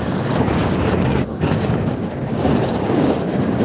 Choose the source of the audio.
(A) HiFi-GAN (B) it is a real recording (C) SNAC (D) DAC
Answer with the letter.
D